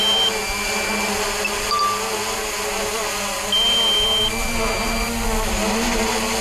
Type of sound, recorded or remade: recorded